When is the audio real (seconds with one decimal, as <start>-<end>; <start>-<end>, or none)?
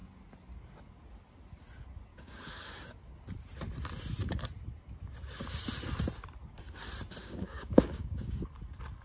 0.0-2.1; 2.7-7.2; 8.4-9.0